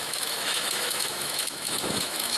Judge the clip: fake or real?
fake